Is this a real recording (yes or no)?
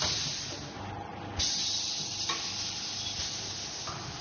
yes